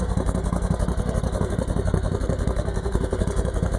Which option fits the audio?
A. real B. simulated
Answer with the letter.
B